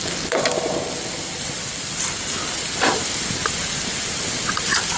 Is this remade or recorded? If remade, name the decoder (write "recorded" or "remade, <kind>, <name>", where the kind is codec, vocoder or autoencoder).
recorded